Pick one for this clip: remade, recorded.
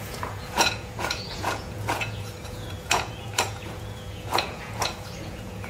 remade